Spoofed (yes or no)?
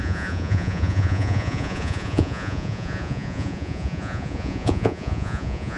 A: yes